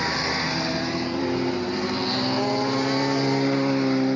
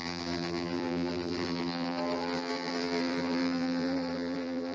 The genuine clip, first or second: first